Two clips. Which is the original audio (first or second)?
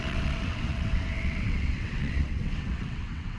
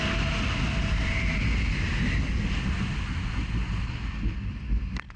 second